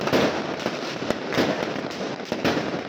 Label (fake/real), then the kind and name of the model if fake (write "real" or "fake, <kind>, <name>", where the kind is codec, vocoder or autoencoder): real